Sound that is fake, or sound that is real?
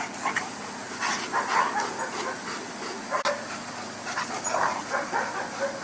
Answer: real